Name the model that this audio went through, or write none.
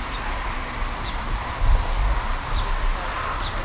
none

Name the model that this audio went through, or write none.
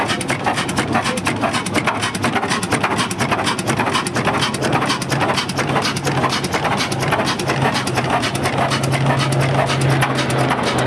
none